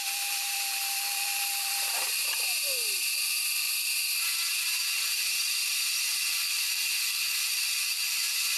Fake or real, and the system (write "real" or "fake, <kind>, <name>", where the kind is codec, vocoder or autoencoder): fake, vocoder, BigVGAN v2